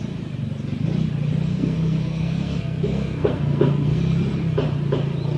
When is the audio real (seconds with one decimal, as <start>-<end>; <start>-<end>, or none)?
0.0-1.5; 4.0-5.4